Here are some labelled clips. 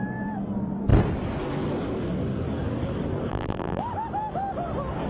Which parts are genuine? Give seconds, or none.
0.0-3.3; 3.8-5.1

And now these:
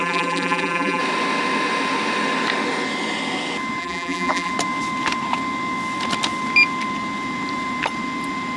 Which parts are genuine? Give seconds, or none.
1.0-3.8; 4.5-8.6

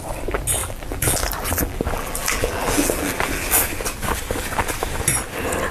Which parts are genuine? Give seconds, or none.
0.0-0.6; 3.5-5.7

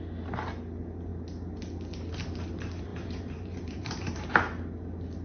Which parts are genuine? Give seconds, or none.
0.0-2.9; 4.3-5.2

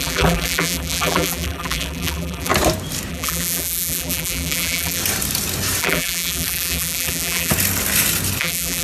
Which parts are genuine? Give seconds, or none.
2.5-3.1; 5.0-5.8; 7.5-8.4

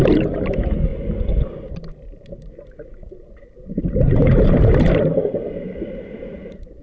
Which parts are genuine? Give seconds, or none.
0.9-1.7

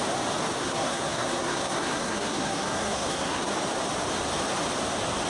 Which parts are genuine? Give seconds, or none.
0.0-0.6; 3.5-5.3